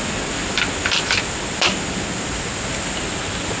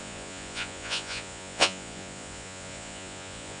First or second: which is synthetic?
second